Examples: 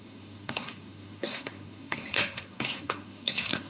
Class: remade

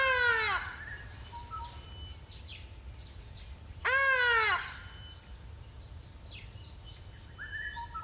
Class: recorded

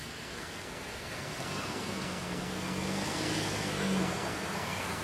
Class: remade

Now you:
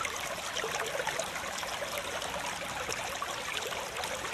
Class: recorded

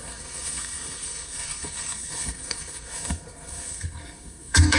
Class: remade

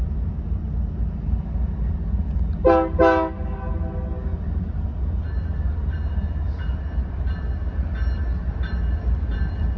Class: recorded